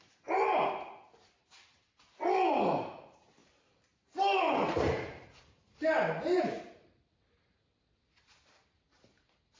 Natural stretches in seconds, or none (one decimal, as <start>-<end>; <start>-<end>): 0.0-3.4; 6.4-9.6